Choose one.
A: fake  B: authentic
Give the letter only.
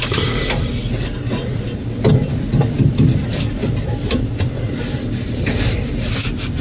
B